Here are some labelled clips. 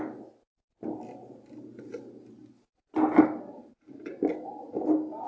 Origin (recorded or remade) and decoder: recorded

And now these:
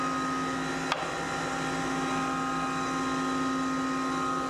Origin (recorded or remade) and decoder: recorded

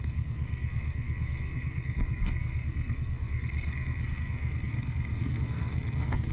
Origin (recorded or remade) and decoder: remade, codec, SNAC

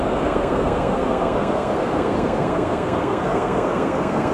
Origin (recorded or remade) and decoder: remade, codec, SNAC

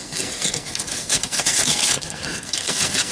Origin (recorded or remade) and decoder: remade, codec, SNAC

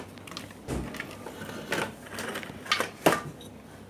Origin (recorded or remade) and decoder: recorded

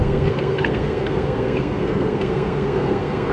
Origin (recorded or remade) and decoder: remade, codec, SNAC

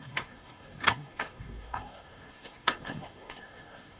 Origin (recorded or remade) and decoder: remade, codec, SNAC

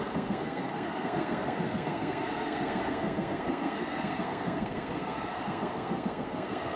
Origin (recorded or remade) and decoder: remade, codec, SNAC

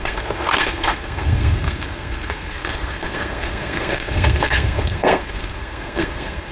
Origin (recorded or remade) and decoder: remade, codec, SNAC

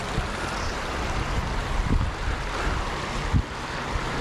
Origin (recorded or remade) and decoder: recorded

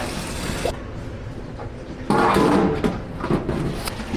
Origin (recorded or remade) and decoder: recorded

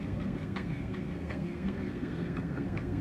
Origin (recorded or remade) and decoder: remade, codec, SNAC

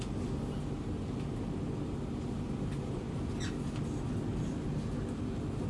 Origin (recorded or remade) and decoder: recorded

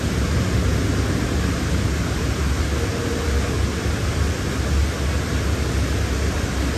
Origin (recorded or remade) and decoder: recorded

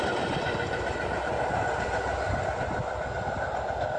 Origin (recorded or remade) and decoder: recorded